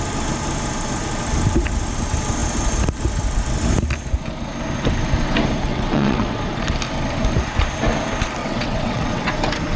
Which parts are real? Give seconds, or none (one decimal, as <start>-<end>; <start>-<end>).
0.0-5.7; 6.4-8.4; 9.3-9.8